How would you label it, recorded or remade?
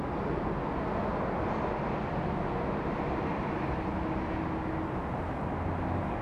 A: recorded